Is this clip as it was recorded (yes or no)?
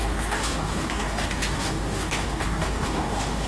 no